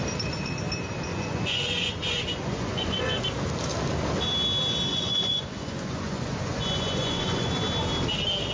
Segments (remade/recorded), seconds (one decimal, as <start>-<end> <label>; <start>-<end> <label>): 0.0-1.1 recorded; 1.1-3.2 remade; 3.2-4.9 recorded; 4.9-7.5 remade; 7.5-8.5 recorded